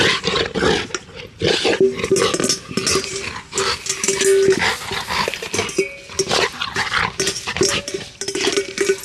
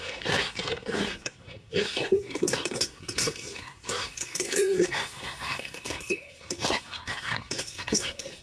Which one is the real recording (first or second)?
first